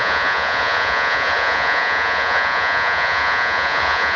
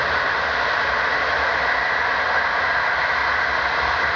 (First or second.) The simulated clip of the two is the first